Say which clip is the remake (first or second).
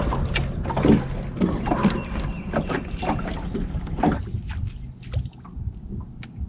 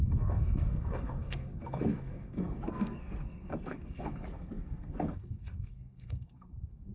second